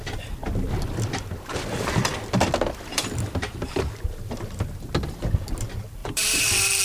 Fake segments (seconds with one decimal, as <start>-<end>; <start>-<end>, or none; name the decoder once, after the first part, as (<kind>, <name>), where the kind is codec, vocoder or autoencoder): 2.9-3.9 (vocoder, BigVGAN v2); 6.0-6.8